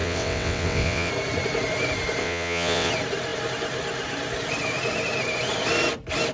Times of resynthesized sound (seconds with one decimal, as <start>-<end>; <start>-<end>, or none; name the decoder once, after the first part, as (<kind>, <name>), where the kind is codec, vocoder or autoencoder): 0.0-1.1 (vocoder, WaveNeXt); 2.2-2.9